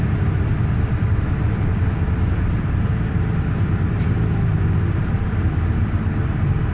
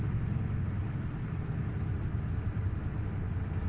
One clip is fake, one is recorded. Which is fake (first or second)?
first